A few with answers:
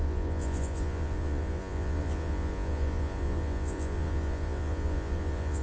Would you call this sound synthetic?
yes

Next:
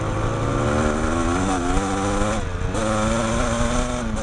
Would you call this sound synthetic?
no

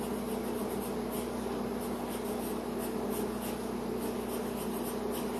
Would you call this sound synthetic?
no